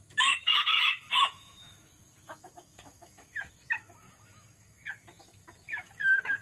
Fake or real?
fake